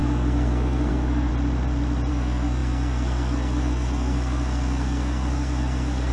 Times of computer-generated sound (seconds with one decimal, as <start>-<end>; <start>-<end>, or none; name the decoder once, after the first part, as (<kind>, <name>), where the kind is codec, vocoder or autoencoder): 0.0-1.3 (codec, SNAC); 2.1-6.1